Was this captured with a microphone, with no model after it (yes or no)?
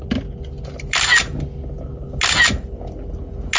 yes